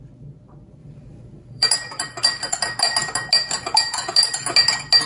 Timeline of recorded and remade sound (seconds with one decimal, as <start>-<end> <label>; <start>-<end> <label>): 0.0-0.8 recorded; 0.8-1.7 remade; 1.7-5.1 recorded